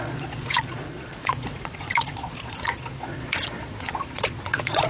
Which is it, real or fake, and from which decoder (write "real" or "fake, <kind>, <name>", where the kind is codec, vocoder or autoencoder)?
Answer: fake, vocoder, Vocos